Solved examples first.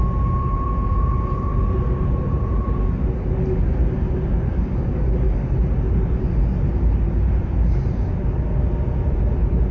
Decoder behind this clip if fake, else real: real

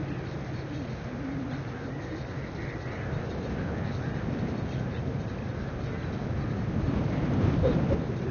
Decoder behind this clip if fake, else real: real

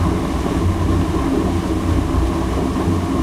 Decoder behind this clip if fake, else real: real